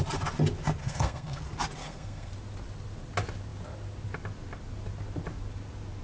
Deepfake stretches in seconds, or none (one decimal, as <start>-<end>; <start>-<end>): 0.8-1.4; 1.8-2.3